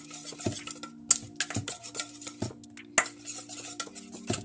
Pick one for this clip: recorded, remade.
recorded